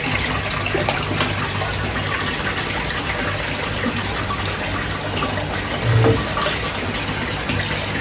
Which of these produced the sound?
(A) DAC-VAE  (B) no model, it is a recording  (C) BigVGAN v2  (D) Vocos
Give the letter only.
B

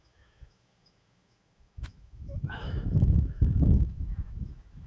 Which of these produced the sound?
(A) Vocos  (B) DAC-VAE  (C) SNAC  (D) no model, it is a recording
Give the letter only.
B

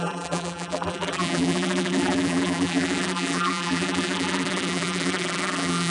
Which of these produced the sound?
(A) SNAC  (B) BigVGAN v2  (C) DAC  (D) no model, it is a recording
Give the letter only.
B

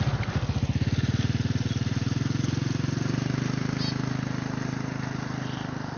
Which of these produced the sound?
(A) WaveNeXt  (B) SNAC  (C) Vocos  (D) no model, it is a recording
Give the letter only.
D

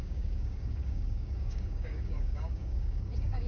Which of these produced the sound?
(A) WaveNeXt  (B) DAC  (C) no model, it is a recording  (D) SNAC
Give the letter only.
B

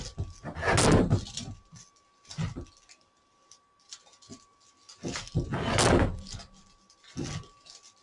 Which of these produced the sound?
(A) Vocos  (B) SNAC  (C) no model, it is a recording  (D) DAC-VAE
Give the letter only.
C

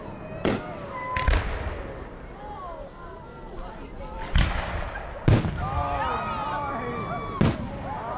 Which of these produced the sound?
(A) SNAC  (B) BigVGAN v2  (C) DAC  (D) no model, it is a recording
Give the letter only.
D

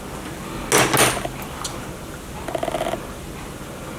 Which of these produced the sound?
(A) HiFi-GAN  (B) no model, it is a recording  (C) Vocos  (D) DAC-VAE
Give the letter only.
B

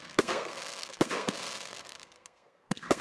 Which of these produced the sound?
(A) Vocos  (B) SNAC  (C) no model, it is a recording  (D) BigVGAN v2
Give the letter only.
B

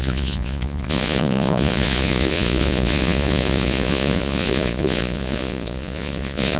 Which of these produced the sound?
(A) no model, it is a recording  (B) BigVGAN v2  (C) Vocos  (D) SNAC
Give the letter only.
C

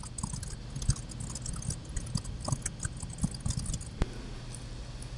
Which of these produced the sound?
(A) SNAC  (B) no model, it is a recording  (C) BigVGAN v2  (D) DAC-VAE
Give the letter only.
B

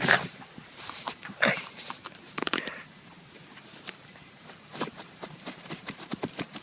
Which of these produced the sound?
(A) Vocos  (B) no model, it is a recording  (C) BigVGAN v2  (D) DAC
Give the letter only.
C